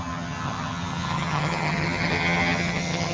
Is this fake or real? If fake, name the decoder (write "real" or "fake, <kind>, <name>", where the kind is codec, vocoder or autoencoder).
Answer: fake, vocoder, HiFi-GAN